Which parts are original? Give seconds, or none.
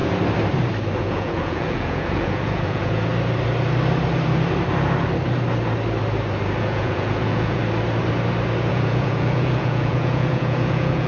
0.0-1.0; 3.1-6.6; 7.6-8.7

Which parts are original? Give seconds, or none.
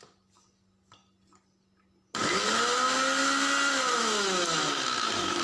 0.0-3.9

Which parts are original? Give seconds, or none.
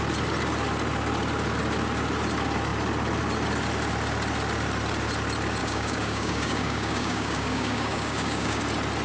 0.0-5.6; 8.6-9.0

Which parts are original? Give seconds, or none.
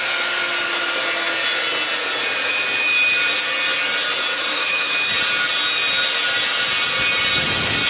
0.0-4.5; 5.1-7.9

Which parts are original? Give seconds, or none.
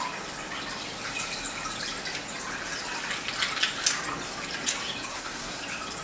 0.0-5.1; 5.6-6.0